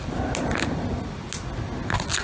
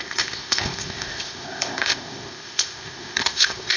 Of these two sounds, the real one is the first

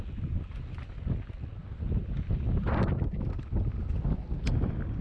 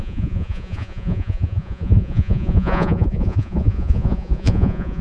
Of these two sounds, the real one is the first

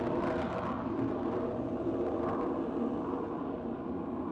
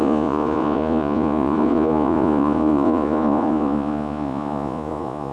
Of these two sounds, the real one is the first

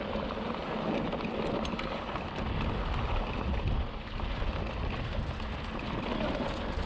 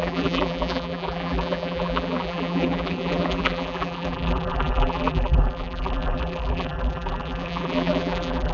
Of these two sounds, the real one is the first